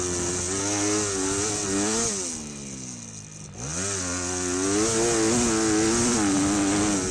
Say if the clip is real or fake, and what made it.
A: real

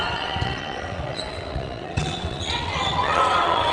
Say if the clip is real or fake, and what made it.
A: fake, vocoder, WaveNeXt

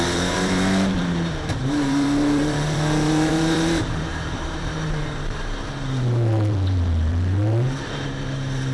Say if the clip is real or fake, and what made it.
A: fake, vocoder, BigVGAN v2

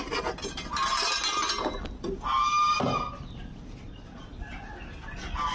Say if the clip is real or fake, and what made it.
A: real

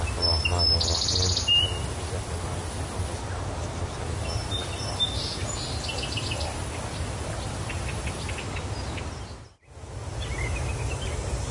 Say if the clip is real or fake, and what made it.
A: real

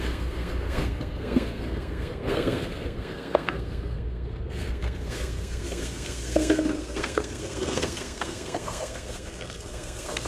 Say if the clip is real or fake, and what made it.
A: fake, codec, SNAC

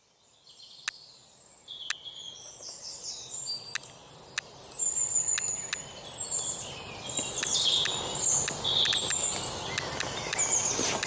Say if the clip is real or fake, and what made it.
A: real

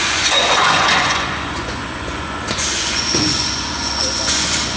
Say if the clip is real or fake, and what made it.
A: fake, vocoder, Vocos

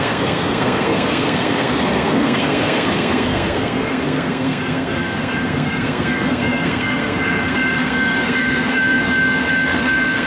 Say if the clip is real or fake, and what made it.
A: fake, codec, SNAC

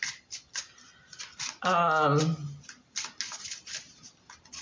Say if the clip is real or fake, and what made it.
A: real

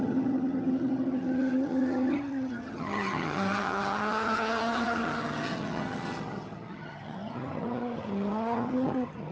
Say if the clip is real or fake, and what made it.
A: fake, vocoder, HiFi-GAN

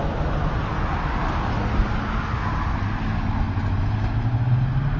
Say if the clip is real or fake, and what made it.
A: real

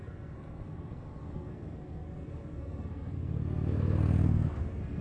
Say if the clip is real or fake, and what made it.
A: fake, codec, SNAC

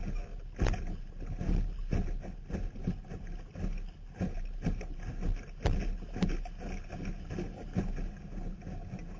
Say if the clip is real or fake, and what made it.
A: real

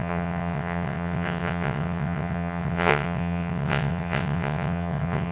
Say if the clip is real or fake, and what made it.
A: fake, vocoder, WaveNeXt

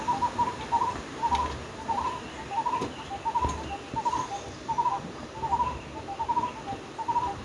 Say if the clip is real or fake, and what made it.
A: real